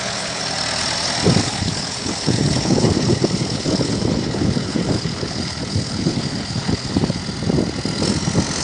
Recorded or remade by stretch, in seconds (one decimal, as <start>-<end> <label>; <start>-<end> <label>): 0.0-0.4 remade; 0.4-1.4 recorded; 1.4-7.2 remade; 7.2-8.6 recorded